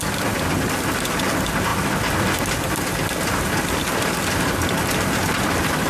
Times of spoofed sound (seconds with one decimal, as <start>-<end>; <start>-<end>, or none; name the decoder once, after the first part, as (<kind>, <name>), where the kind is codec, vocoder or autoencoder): none